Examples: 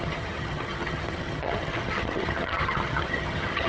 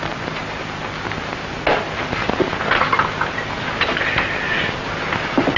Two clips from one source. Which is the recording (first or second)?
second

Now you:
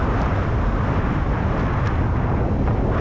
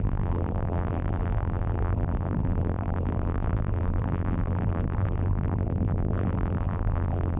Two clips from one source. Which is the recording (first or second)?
first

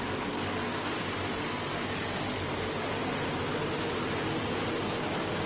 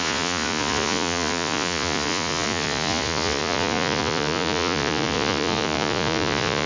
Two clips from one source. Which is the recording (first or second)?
first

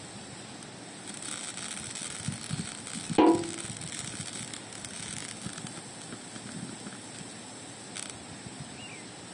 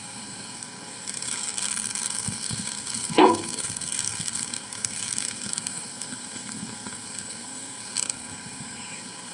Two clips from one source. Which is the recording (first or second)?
first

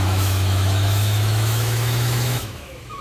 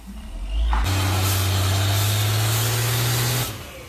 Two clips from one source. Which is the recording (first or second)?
second